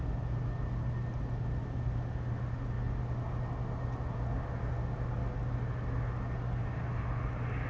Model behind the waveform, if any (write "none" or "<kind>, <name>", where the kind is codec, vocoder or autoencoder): none